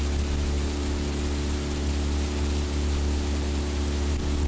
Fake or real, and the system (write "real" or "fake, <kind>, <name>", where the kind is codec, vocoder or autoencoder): real